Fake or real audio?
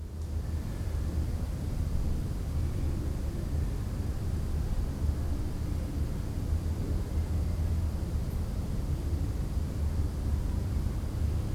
real